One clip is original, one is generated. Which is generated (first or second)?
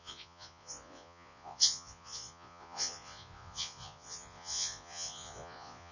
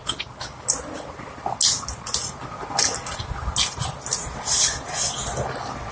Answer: first